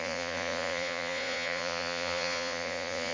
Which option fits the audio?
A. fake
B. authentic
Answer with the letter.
A